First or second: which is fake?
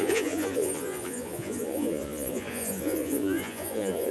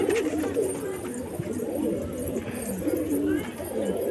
first